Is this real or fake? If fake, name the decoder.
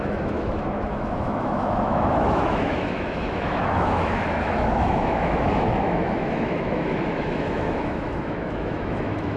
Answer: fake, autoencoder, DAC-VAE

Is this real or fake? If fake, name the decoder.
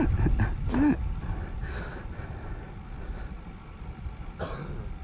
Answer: real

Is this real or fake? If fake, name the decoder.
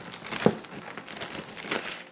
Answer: real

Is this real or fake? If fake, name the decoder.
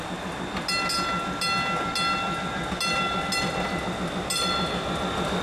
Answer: real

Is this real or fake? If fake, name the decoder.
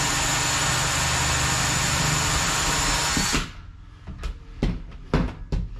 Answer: real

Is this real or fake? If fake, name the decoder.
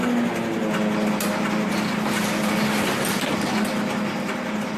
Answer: real